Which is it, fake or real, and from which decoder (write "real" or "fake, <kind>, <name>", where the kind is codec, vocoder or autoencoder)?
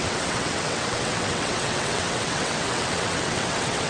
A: fake, vocoder, WaveNeXt